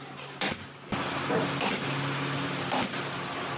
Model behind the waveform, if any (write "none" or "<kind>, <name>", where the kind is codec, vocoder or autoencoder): none